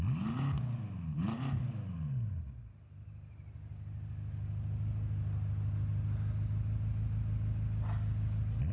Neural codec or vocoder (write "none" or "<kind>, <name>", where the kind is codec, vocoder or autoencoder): none